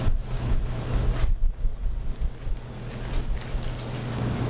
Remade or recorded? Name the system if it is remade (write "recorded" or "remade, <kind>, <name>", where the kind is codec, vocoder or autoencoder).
recorded